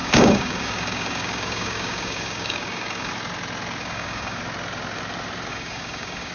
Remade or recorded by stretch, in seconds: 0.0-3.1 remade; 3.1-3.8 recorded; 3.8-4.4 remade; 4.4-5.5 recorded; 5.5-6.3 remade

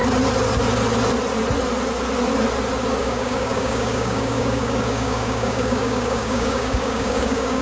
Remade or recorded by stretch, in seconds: 0.0-3.0 recorded; 3.0-7.6 remade